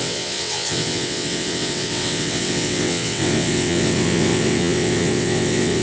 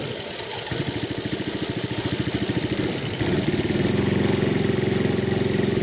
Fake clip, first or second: first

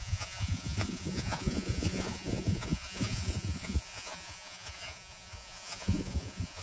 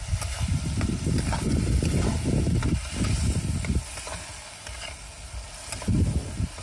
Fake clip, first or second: first